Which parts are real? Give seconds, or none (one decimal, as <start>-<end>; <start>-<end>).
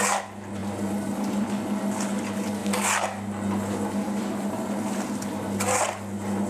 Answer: 0.0-6.5